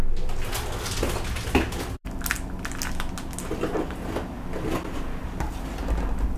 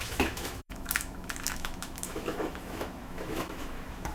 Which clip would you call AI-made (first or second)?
second